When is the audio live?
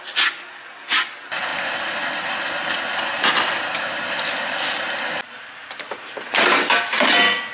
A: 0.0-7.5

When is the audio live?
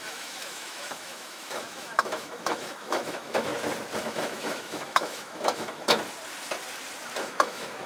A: 3.5-4.0; 6.0-7.2